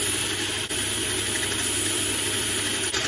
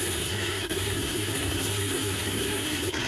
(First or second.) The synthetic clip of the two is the second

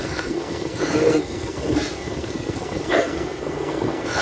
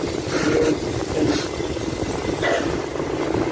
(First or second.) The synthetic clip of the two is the first